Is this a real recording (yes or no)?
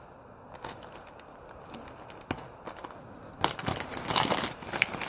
yes